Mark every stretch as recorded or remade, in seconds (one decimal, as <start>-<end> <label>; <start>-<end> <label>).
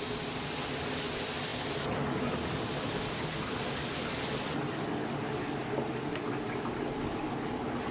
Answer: 0.0-7.9 recorded